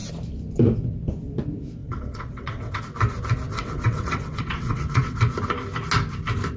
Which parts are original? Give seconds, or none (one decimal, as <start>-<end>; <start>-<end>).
0.0-1.8; 2.8-3.5; 5.2-6.6